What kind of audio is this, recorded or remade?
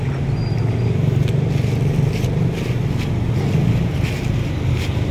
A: recorded